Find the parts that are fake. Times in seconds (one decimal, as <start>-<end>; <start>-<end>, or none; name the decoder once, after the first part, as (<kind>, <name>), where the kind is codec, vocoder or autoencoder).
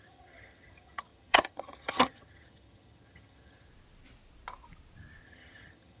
0.0-3.7 (vocoder, HiFi-GAN); 5.2-6.0